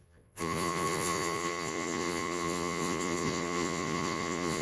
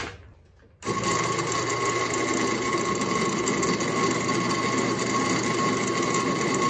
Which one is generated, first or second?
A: first